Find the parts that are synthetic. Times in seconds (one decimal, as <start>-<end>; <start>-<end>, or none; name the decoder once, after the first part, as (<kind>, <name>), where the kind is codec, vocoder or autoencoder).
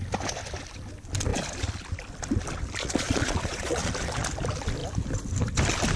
2.8-3.9 (vocoder, Vocos)